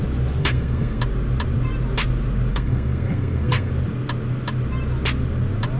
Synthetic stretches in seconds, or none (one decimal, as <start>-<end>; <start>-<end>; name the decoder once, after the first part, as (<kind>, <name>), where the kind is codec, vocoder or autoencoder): 0.4-1.0 (codec, SNAC); 2.5-3.7